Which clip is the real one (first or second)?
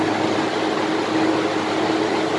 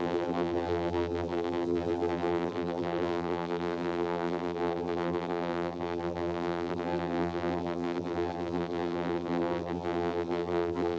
first